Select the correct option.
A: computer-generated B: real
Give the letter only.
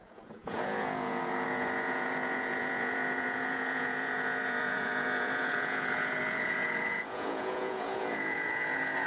A